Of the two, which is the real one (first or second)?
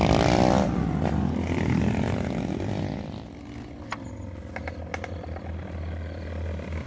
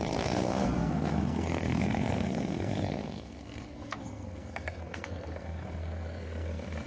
first